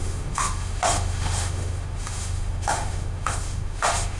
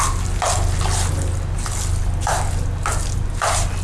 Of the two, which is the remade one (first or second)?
first